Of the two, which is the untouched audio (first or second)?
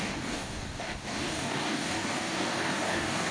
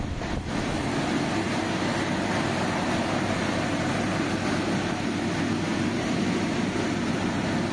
second